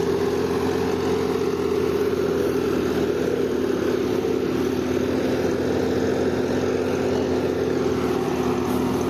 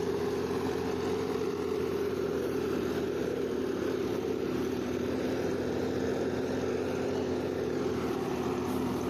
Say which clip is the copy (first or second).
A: second